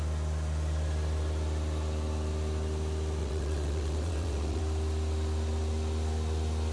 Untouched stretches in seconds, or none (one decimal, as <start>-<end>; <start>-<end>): 0.0-3.2; 4.6-6.7